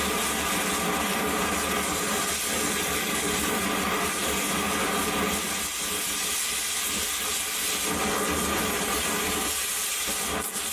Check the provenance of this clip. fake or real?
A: real